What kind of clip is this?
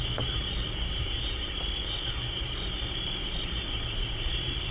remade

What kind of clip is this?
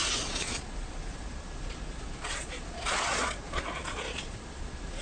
remade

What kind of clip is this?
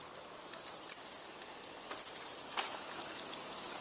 recorded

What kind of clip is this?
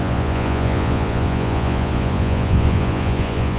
remade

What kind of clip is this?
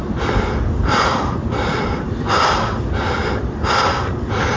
recorded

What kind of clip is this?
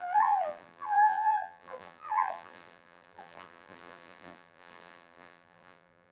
remade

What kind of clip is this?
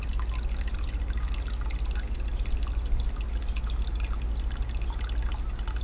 recorded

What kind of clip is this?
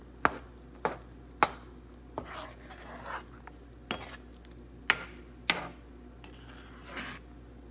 recorded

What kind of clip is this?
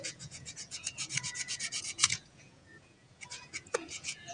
remade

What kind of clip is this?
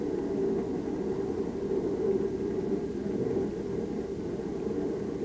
remade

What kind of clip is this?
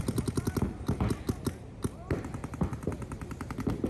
recorded